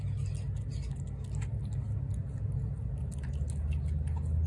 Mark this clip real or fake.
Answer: real